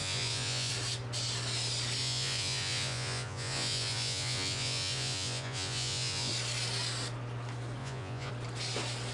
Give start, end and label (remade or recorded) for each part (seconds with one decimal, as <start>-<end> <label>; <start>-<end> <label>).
0.0-0.7 remade; 0.7-2.0 recorded; 2.0-6.3 remade; 6.3-7.8 recorded; 7.8-8.3 remade; 8.3-9.1 recorded